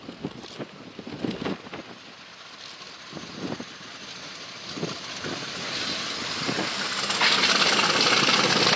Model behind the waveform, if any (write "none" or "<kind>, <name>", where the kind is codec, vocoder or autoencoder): none